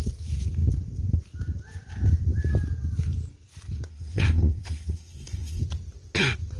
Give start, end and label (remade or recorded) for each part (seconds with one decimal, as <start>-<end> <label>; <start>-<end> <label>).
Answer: 0.0-3.9 recorded; 3.9-5.6 remade; 5.6-6.6 recorded